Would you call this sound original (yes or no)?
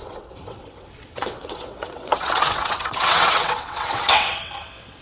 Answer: no